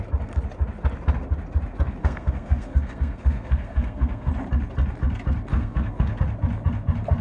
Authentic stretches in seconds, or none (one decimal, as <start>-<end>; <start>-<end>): 0.0-2.0; 4.3-5.5; 6.2-7.2